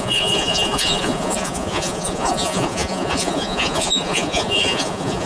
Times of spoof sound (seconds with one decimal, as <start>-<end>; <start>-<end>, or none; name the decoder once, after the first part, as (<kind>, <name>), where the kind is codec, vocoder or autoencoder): 0.0-5.3 (vocoder, Vocos)